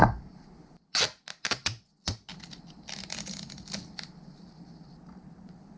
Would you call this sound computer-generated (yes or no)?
no